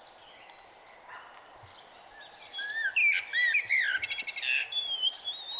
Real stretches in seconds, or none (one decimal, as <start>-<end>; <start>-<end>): 0.0-4.6